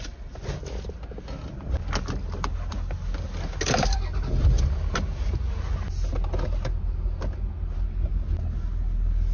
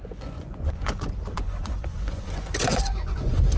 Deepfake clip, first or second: second